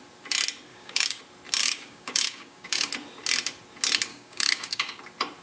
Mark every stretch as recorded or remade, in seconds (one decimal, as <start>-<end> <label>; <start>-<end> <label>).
0.0-0.7 recorded; 0.7-1.2 remade; 1.2-1.6 recorded; 1.6-2.9 remade; 2.9-4.1 recorded; 4.1-5.0 remade; 5.0-5.4 recorded